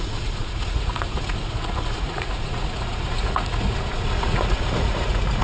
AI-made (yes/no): yes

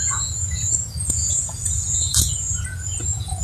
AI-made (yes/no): yes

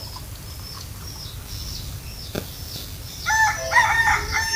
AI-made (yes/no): no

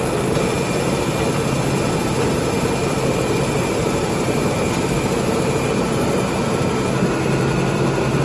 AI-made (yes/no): yes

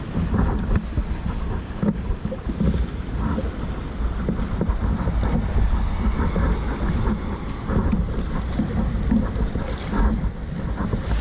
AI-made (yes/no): no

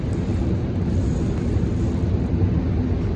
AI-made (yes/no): no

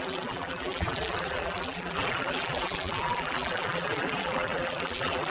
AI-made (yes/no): yes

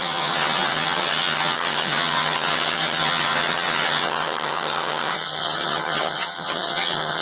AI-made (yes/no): yes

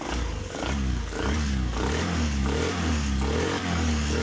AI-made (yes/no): yes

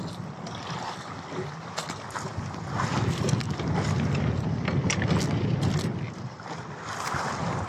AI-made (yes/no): no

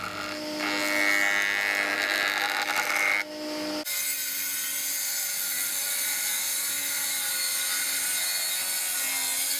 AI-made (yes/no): no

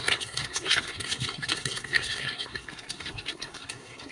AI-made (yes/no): yes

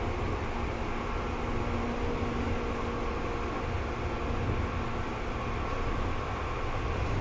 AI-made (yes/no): no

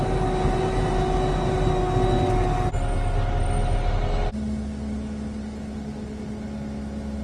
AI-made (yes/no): no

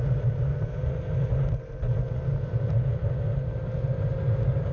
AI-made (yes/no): no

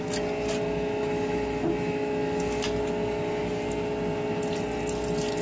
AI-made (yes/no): no